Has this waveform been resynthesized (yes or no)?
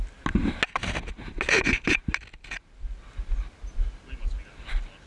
no